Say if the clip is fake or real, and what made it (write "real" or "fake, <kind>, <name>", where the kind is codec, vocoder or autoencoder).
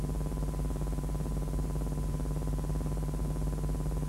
real